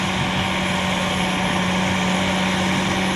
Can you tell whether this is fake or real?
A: real